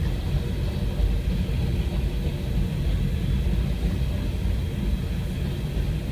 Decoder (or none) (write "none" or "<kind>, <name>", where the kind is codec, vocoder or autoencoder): none